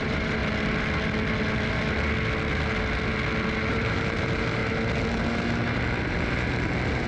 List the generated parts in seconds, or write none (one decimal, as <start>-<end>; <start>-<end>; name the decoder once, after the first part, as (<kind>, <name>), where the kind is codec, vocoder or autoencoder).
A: 0.0-0.4 (vocoder, BigVGAN v2); 3.7-4.6